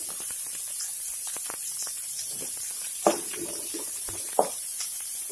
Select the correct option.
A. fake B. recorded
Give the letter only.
A